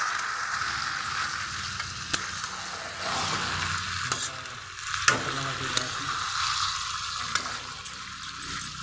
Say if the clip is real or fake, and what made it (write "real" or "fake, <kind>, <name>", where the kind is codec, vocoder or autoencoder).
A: real